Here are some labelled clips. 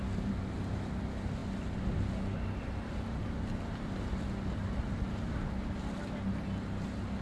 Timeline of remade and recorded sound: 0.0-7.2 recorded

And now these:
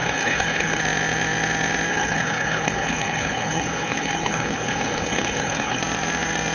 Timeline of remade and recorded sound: 0.0-0.8 remade; 0.8-1.9 recorded; 1.9-5.8 remade; 5.8-6.5 recorded

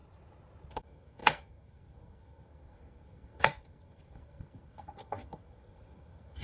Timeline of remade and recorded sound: 0.0-0.7 recorded; 0.7-6.4 remade

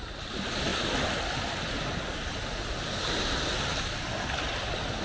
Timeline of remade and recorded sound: 0.0-5.0 recorded

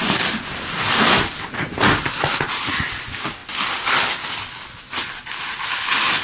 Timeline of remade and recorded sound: 0.0-6.2 recorded

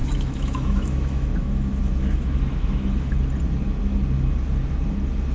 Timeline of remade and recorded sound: 0.0-3.1 remade; 3.1-5.3 recorded